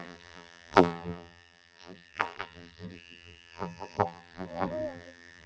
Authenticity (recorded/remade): remade